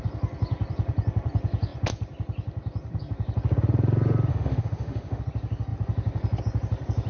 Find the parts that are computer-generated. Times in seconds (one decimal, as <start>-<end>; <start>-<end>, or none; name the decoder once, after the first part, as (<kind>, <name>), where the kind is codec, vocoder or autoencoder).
4.3-5.2 (autoencoder, DAC-VAE)